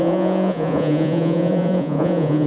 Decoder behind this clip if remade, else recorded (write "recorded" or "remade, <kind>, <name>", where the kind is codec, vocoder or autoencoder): remade, vocoder, Vocos